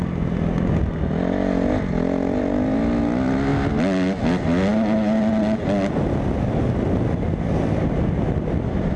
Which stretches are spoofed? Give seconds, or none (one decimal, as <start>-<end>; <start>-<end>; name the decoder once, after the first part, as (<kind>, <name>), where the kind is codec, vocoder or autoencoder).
none